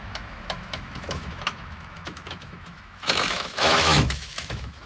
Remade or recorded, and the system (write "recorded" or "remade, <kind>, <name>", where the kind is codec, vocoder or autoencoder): remade, autoencoder, DAC-VAE